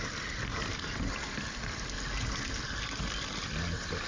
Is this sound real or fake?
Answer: real